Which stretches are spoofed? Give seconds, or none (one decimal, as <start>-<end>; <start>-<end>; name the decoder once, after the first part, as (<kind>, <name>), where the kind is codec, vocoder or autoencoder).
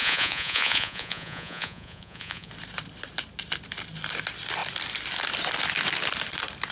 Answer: 0.0-2.5 (vocoder, Vocos)